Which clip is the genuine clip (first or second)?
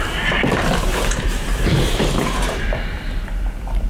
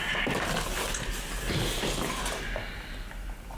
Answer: second